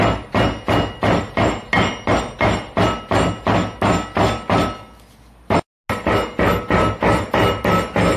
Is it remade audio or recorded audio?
recorded